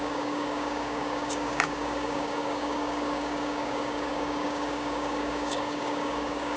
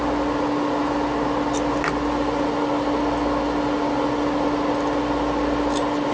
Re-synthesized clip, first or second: first